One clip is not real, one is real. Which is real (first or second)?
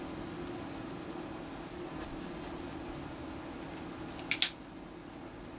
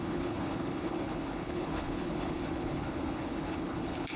first